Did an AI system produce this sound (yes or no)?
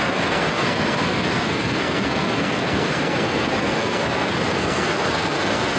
yes